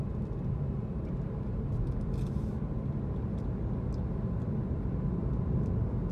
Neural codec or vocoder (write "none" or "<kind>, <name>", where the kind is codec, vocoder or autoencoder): none